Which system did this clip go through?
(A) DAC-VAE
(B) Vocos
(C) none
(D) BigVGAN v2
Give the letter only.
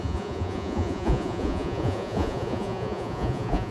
B